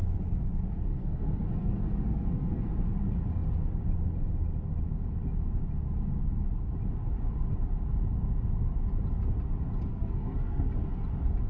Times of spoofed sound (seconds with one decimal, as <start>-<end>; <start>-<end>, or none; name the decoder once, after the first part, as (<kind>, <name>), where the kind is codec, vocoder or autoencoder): 0.9-2.7 (codec, SNAC); 9.9-10.7